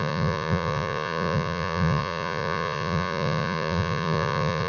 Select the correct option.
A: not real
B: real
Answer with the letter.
A